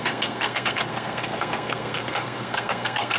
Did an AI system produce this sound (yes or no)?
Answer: yes